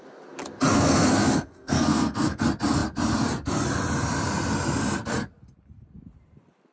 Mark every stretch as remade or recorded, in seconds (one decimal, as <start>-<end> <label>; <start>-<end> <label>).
0.0-0.7 recorded; 0.7-2.4 remade; 2.4-6.7 recorded